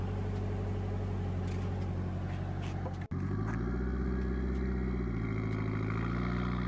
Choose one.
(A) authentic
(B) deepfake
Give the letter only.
A